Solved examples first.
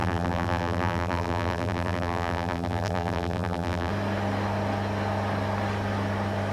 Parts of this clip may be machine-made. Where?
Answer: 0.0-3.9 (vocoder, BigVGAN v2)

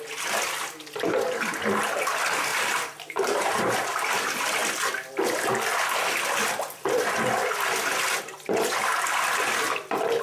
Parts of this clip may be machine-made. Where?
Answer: 2.5-4.1 (vocoder, BigVGAN v2)

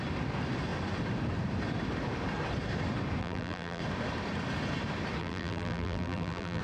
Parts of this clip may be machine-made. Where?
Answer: 3.2-3.8 (vocoder, BigVGAN v2); 5.2-6.6

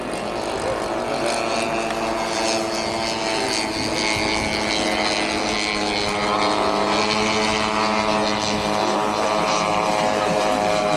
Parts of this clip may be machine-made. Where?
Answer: 8.8-10.6 (vocoder, BigVGAN v2)